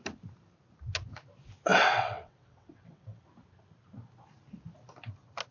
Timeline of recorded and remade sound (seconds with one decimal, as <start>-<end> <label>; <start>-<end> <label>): 0.0-1.7 recorded; 1.7-3.2 remade; 3.2-5.5 recorded